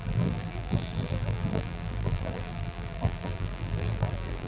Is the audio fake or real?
fake